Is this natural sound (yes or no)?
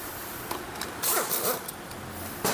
yes